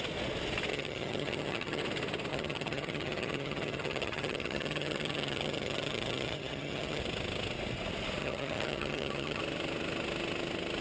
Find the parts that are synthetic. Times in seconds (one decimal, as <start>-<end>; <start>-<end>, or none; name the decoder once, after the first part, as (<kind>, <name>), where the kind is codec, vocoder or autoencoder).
0.7-1.8 (vocoder, HiFi-GAN); 2.3-7.0; 8.2-9.4